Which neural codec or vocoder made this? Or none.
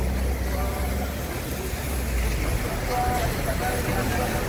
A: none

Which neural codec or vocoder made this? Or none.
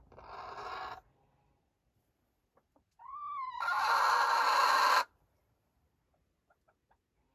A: none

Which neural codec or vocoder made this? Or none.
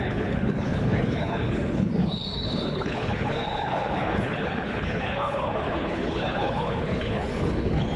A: codec, HILCodec